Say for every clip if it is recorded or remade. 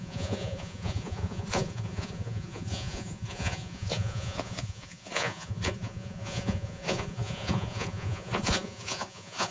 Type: remade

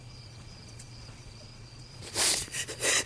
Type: remade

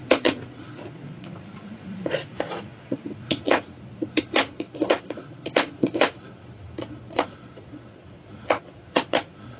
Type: remade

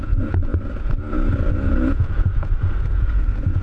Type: remade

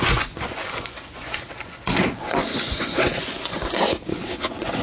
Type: remade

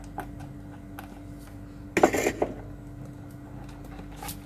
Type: recorded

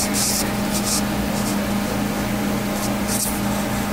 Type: recorded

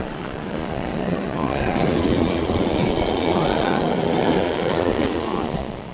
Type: remade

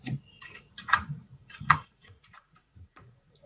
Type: remade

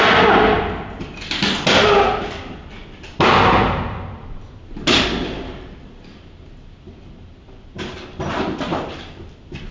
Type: recorded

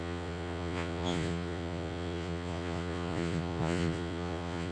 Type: remade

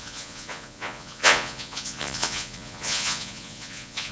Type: remade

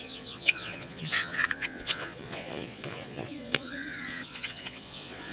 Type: remade